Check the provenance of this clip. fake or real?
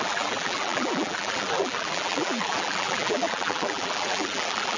fake